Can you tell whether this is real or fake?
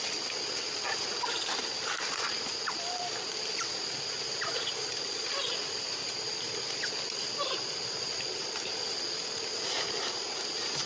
real